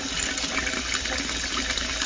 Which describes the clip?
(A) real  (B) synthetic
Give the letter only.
A